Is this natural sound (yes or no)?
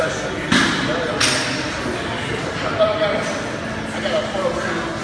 yes